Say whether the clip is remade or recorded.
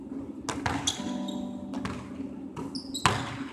recorded